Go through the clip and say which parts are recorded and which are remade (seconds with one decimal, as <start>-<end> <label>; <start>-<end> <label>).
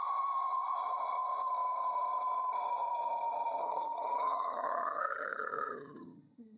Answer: 0.0-3.6 recorded; 3.6-6.6 remade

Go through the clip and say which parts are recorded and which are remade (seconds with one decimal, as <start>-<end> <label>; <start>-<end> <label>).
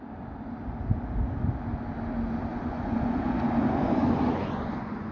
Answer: 0.0-2.5 recorded; 2.5-5.1 remade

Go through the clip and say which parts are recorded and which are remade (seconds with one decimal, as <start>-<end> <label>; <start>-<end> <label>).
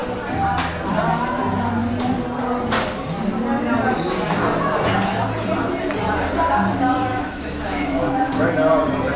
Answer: 0.0-7.1 recorded; 7.1-8.5 remade; 8.5-9.2 recorded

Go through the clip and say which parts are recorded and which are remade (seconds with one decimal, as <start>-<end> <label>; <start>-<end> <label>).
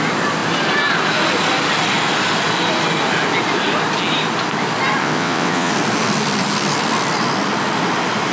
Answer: 0.0-5.0 recorded; 5.0-5.7 remade; 5.7-8.3 recorded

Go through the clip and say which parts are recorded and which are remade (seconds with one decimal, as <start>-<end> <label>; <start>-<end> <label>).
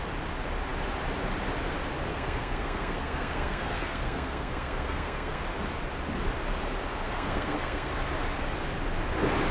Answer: 0.0-2.1 recorded; 2.1-5.4 remade; 5.4-6.9 recorded; 6.9-7.9 remade; 7.9-9.5 recorded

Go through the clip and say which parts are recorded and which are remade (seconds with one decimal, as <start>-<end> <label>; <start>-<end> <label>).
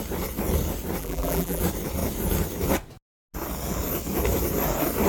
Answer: 0.0-1.0 recorded; 1.0-1.6 remade; 1.6-5.1 recorded